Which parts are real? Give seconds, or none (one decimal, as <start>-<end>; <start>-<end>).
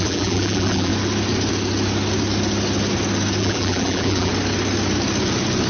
0.9-3.4; 4.3-5.7